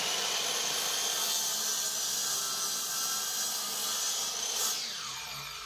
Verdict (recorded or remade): recorded